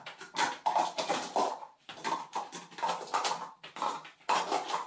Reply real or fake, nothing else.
real